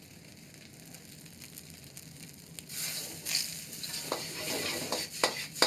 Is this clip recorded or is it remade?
recorded